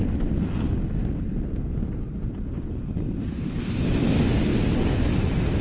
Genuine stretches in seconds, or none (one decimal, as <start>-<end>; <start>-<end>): 0.0-1.0; 2.9-5.6